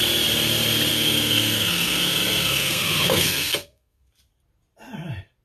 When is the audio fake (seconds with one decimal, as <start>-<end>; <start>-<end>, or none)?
0.9-4.1